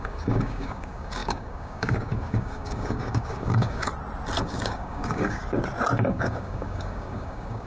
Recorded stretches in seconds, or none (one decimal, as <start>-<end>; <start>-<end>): 3.9-4.4; 5.4-6.1